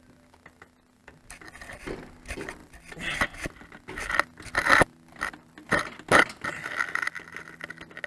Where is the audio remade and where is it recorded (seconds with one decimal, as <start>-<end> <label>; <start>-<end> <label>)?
0.0-8.1 recorded